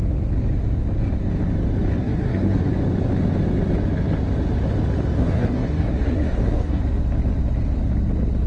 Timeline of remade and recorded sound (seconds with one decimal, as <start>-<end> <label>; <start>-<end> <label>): 0.0-2.0 recorded; 2.0-2.7 remade; 2.7-5.2 recorded; 5.2-6.8 remade; 6.8-8.5 recorded